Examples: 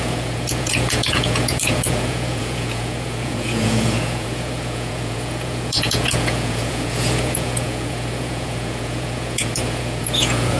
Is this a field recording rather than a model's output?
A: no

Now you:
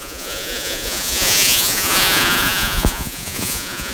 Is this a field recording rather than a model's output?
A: no